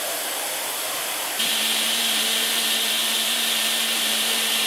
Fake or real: fake